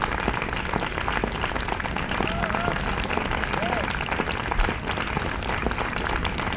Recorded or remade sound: recorded